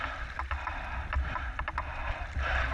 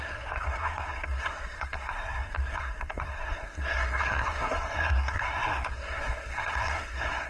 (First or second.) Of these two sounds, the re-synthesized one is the second